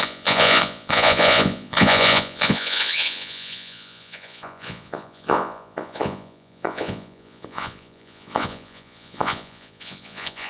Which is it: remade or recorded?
remade